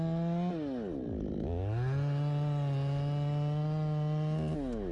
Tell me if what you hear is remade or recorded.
recorded